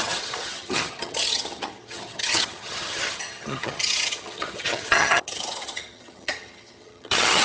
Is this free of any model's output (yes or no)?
no